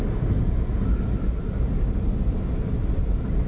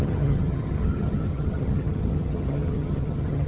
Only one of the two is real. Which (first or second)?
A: first